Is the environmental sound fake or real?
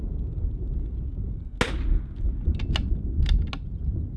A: real